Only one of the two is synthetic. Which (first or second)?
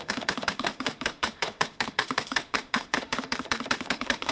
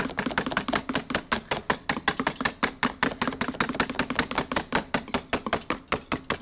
first